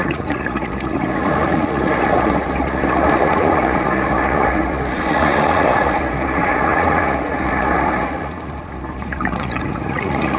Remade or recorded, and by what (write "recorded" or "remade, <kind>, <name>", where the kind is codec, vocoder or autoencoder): remade, vocoder, Vocos